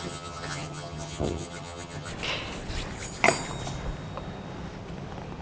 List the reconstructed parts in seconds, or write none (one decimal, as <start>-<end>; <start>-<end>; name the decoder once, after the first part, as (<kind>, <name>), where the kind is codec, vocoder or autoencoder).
0.0-2.1 (vocoder, HiFi-GAN)